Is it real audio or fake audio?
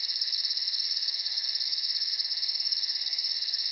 fake